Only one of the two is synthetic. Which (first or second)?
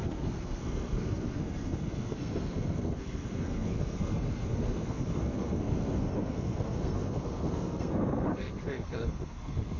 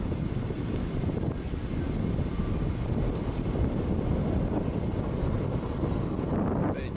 first